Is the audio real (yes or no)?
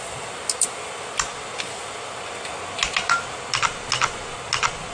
yes